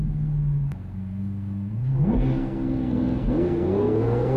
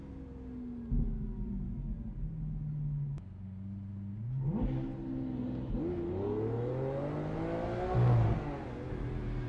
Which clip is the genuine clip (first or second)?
second